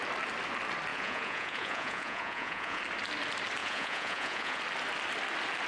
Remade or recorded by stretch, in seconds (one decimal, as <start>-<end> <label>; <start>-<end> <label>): 0.0-0.9 recorded; 0.9-2.8 remade; 2.8-3.6 recorded; 3.6-4.6 remade; 4.6-5.7 recorded

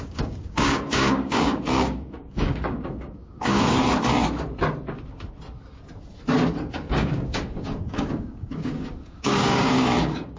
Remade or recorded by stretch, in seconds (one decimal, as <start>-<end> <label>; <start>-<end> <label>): 0.0-3.8 remade; 3.8-6.7 recorded; 6.7-10.4 remade

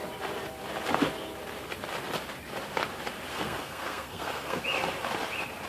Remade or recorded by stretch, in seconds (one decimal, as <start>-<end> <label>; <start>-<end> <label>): 0.0-3.3 recorded; 3.3-4.6 remade; 4.6-5.7 recorded